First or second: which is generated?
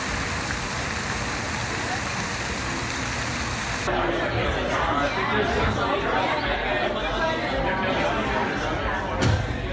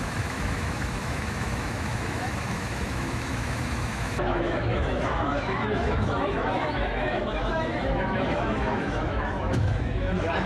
second